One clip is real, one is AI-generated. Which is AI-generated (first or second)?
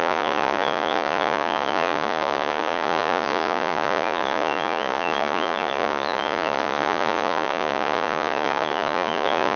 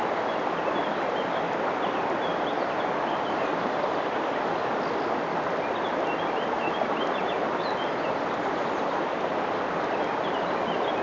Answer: first